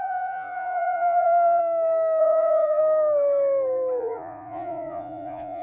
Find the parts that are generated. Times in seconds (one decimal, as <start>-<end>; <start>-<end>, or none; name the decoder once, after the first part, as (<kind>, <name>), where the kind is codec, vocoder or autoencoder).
0.0-1.6 (vocoder, Vocos); 2.2-2.8; 4.0-5.6